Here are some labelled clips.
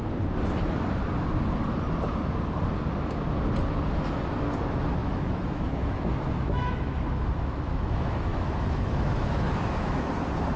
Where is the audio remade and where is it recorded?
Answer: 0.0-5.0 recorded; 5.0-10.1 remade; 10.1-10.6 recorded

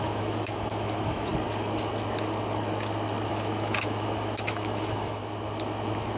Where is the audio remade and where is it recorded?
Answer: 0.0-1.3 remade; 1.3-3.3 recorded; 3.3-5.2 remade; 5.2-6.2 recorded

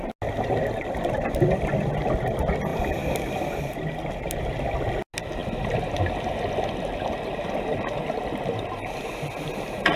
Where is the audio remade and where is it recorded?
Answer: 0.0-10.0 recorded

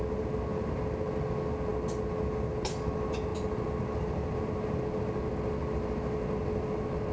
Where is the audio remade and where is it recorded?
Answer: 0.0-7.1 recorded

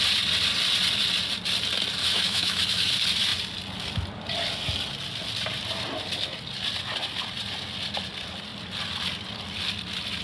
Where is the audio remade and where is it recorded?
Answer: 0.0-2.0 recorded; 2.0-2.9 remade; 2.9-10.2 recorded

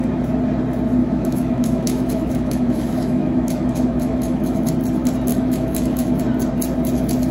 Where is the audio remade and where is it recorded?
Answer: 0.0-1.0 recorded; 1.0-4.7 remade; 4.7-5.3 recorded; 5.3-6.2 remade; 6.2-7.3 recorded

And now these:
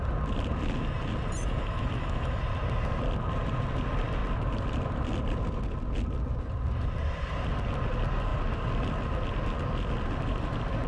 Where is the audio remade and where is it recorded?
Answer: 0.0-1.4 recorded; 1.4-2.4 remade; 2.4-10.9 recorded